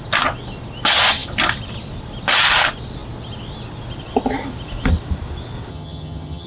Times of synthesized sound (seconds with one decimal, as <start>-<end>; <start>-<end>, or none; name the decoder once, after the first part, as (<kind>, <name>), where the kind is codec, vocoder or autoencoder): 5.7-6.5 (vocoder, HiFi-GAN)